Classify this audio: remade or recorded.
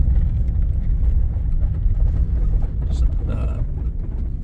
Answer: recorded